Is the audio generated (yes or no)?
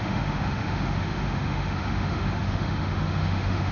yes